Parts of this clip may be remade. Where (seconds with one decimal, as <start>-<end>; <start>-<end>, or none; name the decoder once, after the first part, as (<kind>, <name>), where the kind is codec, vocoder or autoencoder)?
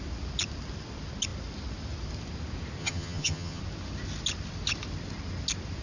2.8-3.6 (vocoder, HiFi-GAN)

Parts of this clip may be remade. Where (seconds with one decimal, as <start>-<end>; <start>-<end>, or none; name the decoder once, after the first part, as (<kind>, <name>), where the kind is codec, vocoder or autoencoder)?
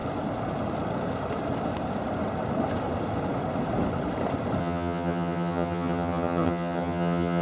4.6-7.4 (vocoder, HiFi-GAN)